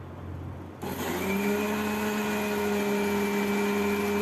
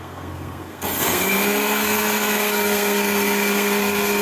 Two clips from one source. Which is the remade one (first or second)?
second